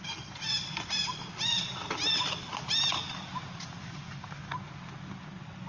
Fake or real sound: real